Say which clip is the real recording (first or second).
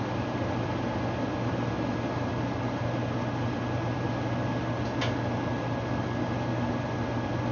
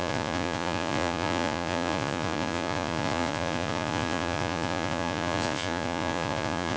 first